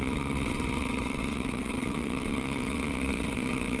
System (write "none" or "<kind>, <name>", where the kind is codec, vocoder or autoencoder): vocoder, WaveNeXt